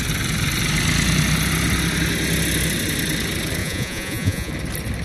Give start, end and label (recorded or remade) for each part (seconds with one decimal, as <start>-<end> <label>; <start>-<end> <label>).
0.0-3.6 recorded; 3.6-4.5 remade; 4.5-5.0 recorded